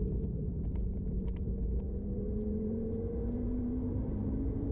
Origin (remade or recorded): remade